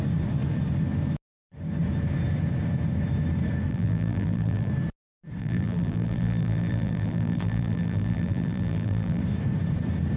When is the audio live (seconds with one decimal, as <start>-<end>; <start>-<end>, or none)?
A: 0.0-3.7; 4.7-5.4; 9.2-10.2